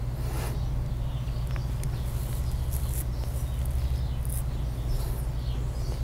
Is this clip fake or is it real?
real